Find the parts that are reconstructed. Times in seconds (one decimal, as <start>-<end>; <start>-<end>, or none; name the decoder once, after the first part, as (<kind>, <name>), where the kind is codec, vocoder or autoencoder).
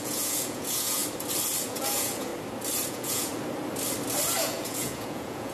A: 0.0-1.0 (vocoder, Vocos); 1.6-2.3; 2.9-3.3; 4.4-5.5